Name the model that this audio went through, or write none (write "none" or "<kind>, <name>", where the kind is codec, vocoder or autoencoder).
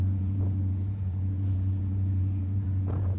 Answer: vocoder, Vocos